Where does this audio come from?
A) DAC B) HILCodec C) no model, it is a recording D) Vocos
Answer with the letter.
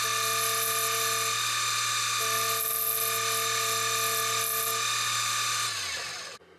C